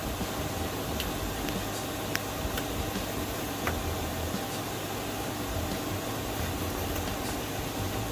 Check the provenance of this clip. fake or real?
real